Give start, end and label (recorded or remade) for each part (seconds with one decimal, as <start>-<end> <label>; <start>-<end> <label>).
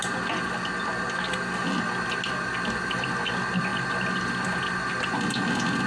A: 0.0-5.9 recorded